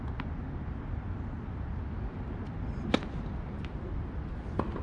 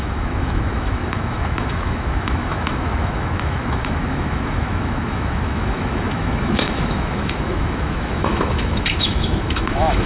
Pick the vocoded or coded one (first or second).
second